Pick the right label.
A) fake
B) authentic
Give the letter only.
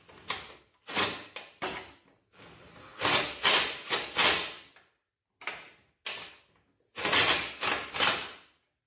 B